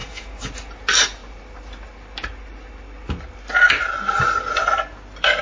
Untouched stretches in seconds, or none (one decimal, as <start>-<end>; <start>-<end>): 0.5-5.4